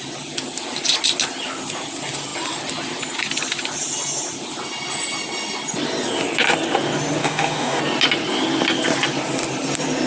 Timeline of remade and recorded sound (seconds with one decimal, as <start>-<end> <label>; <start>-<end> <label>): 0.0-7.2 recorded; 7.2-7.8 remade; 7.8-10.1 recorded